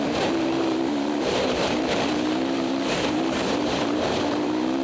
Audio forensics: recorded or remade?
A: remade